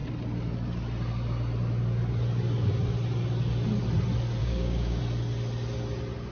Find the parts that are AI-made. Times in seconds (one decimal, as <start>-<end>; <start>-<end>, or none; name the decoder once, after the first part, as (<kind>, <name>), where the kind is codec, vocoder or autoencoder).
4.4-5.0 (codec, DAC)